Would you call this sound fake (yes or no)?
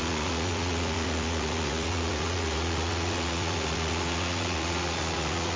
yes